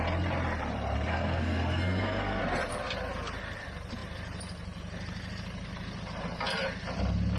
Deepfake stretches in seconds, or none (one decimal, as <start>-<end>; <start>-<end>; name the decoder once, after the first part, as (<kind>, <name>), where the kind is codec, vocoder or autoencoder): 1.1-2.4 (codec, SNAC)